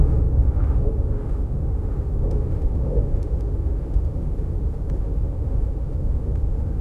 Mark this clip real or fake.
fake